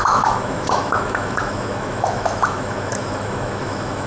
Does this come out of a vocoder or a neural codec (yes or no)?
yes